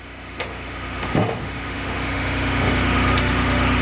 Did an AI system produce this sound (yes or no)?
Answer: yes